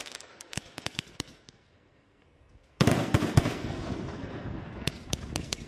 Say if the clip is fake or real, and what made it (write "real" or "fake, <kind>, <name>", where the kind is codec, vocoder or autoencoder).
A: fake, codec, SNAC